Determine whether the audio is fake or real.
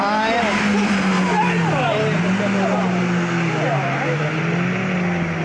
real